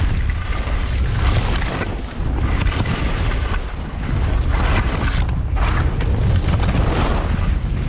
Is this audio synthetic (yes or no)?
no